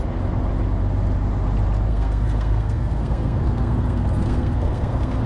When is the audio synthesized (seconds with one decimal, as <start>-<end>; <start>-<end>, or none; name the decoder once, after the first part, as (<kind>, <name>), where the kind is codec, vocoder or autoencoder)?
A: 1.9-5.3 (codec, SNAC)